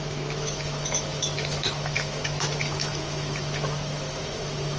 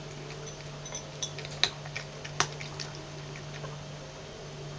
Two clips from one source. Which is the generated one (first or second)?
first